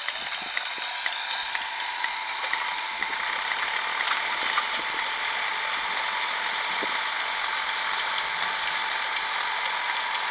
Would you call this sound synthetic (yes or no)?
no